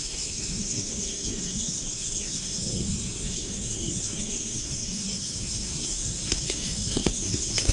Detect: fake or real fake